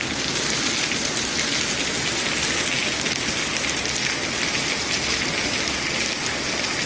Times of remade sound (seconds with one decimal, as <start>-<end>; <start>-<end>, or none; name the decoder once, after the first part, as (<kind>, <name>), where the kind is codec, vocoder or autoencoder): none